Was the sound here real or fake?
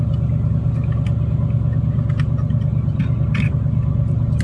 real